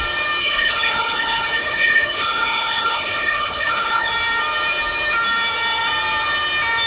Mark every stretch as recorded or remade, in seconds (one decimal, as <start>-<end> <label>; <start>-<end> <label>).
0.0-0.4 recorded; 0.4-4.1 remade; 4.1-6.9 recorded